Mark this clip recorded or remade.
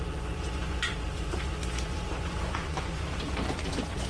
remade